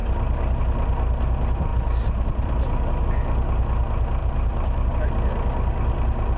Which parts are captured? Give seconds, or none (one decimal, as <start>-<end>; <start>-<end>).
0.0-4.2; 4.9-6.4